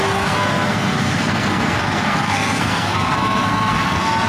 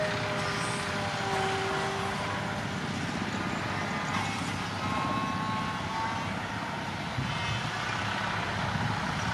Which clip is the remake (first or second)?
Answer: first